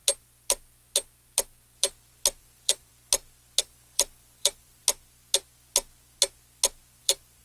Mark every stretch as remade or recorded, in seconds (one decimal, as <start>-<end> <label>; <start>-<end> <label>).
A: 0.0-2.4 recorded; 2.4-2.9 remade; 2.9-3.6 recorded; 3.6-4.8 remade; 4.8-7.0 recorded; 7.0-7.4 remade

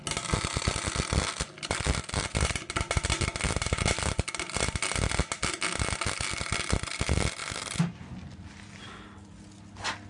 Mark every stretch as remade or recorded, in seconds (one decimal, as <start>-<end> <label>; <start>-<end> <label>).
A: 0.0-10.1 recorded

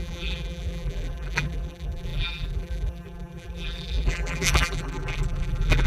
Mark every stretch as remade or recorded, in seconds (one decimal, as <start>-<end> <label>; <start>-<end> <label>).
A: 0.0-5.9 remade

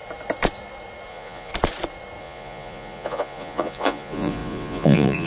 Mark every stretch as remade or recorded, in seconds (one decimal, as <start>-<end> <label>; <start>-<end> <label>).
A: 0.0-1.1 recorded; 1.1-1.5 remade; 1.5-2.2 recorded; 2.2-5.3 remade

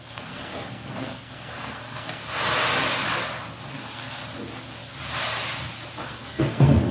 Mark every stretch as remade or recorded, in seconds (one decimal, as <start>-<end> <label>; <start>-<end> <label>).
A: 0.0-2.2 remade; 2.2-3.7 recorded; 3.7-4.2 remade; 4.2-6.0 recorded; 6.0-6.9 remade

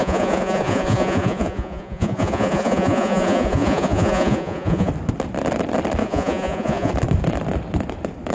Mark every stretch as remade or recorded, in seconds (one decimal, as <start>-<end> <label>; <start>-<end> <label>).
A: 0.0-4.9 remade; 4.9-6.0 recorded; 6.0-6.9 remade; 6.9-8.3 recorded

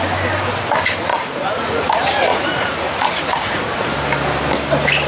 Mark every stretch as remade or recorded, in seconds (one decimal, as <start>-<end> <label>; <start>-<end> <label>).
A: 0.0-1.1 recorded; 1.1-1.8 remade; 1.8-2.3 recorded; 2.3-3.9 remade; 3.9-5.1 recorded